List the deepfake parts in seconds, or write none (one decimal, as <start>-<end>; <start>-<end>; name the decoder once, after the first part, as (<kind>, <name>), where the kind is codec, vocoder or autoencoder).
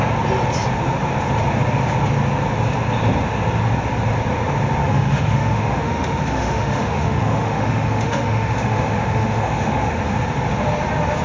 4.8-10.0 (autoencoder, DAC-VAE)